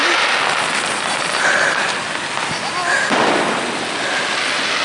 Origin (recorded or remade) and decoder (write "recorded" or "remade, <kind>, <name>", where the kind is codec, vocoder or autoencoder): recorded